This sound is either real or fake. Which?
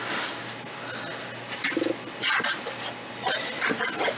real